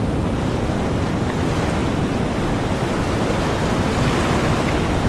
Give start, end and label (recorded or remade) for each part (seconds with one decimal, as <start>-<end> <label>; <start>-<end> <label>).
0.0-5.1 recorded

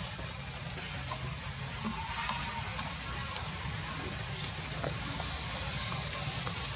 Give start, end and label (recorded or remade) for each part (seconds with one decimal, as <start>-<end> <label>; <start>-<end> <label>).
0.0-6.8 recorded

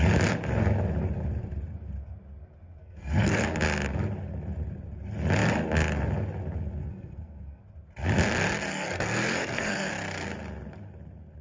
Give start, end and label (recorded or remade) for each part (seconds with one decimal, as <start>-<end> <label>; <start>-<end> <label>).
0.0-2.8 recorded; 2.8-3.4 remade; 3.4-6.8 recorded; 6.8-7.6 remade; 7.6-8.7 recorded; 8.7-9.9 remade; 9.9-11.4 recorded

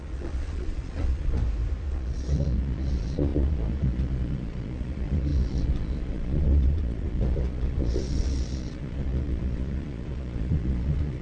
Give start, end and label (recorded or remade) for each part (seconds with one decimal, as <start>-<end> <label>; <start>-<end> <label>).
0.0-1.4 remade; 1.4-1.9 recorded; 1.9-11.2 remade

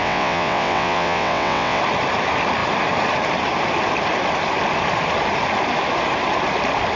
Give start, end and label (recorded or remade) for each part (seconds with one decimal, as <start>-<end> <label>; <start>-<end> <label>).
0.0-1.8 remade; 1.8-7.0 recorded

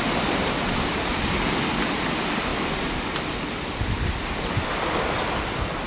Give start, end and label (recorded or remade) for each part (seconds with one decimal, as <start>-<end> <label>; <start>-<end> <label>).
0.0-5.9 recorded

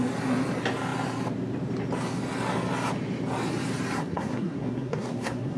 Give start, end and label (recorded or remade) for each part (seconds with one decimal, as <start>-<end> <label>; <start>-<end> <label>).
0.0-4.0 recorded; 4.0-5.6 remade

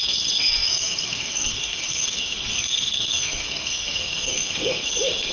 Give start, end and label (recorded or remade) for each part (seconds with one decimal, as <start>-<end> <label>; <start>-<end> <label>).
0.0-5.3 remade